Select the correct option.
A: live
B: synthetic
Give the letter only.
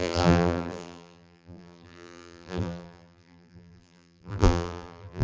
B